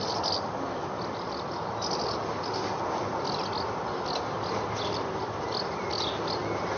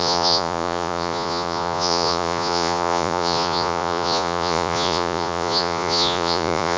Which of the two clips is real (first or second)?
first